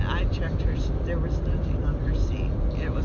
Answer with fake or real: real